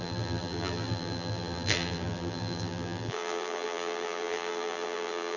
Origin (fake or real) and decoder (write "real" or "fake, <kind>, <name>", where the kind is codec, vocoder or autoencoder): fake, vocoder, BigVGAN v2